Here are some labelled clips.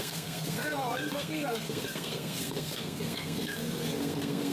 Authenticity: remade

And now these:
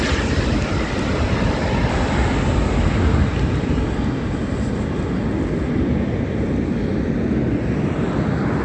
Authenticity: recorded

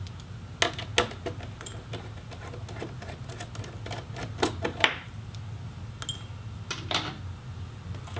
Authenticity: recorded